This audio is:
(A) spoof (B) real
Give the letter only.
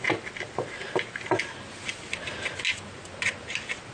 B